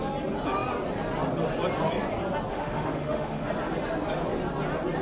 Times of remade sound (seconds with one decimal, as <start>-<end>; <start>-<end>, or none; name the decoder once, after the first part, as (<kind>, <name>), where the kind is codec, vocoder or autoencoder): 2.5-3.5 (autoencoder, DAC-VAE)